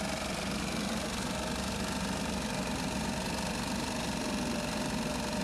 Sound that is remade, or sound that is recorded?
recorded